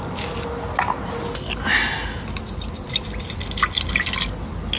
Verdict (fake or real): real